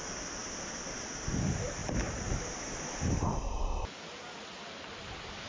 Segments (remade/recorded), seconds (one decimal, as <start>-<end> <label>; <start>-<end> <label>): 0.0-5.5 recorded